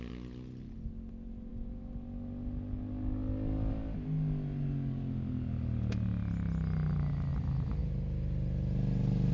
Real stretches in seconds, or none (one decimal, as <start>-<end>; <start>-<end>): 0.0-7.3; 7.8-9.3